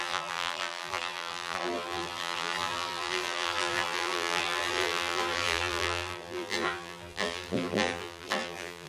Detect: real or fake fake